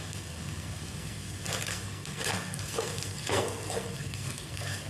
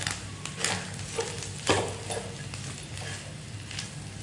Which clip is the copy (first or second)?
first